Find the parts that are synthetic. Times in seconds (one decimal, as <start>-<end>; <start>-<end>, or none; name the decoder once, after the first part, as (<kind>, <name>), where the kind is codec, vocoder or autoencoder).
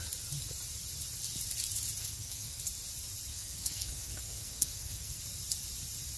2.0-2.6 (codec, SNAC); 3.3-5.2